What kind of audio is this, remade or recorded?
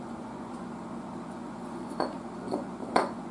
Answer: remade